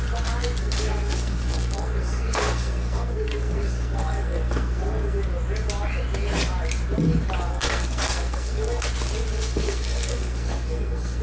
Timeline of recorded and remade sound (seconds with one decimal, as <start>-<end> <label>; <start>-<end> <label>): 0.0-0.6 recorded; 0.6-5.2 remade; 5.2-7.5 recorded; 7.5-8.9 remade; 8.9-9.3 recorded; 9.3-11.2 remade